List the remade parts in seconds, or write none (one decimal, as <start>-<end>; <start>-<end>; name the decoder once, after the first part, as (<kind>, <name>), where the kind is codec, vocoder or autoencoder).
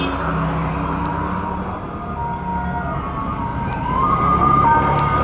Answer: 0.6-1.8 (vocoder, BigVGAN v2); 3.5-4.8